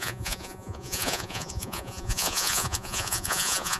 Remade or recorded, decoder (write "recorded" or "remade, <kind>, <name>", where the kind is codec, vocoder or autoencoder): remade, vocoder, Vocos